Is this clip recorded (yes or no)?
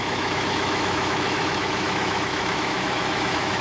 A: no